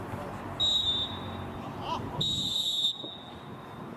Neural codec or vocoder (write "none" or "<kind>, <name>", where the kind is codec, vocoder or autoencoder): none